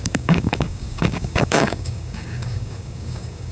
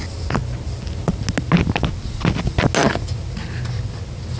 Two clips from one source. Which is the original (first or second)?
second